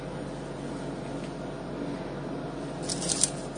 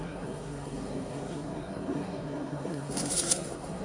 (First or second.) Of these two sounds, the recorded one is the first